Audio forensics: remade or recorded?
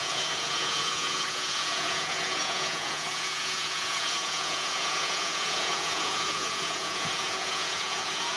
remade